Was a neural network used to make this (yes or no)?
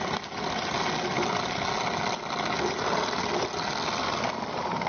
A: no